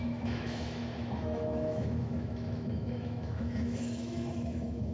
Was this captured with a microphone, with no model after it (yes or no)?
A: no